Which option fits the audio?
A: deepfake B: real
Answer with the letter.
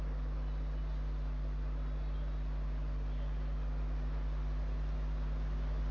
B